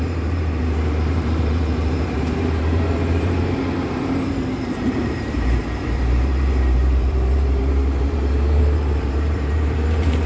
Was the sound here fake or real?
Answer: fake